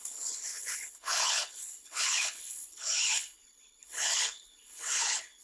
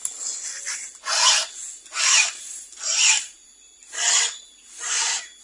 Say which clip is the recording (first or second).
second